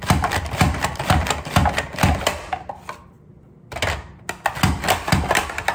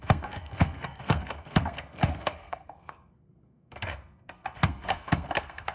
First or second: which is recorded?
first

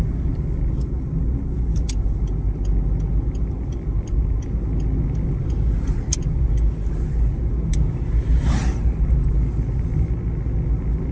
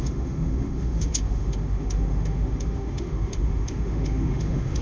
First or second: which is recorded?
first